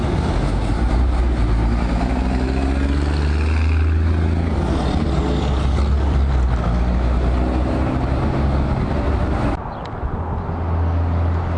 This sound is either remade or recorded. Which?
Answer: recorded